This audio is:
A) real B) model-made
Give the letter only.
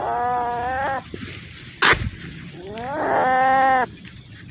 A